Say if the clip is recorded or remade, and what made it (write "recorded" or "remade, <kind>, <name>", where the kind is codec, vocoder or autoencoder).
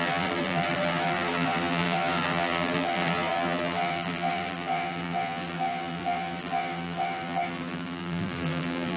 remade, vocoder, BigVGAN v2